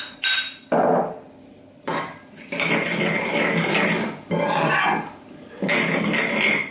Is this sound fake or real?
real